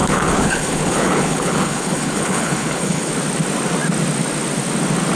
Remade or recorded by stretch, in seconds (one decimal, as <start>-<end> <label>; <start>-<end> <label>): 0.0-3.1 remade; 3.1-5.2 recorded